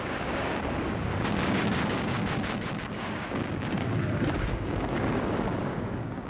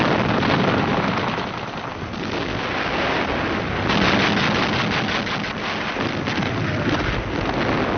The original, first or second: second